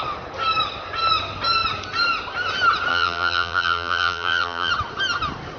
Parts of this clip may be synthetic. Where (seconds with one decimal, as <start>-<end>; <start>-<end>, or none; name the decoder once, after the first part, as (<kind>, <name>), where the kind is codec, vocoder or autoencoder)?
2.9-4.7 (vocoder, BigVGAN v2)